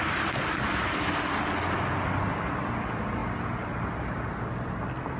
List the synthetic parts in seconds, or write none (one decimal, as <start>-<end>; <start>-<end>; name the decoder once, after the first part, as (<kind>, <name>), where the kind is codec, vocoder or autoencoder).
none